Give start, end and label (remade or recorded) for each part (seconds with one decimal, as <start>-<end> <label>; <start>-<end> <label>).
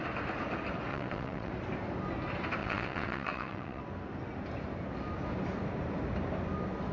0.0-0.9 recorded; 0.9-1.5 remade; 1.5-2.6 recorded; 2.6-3.8 remade; 3.8-6.9 recorded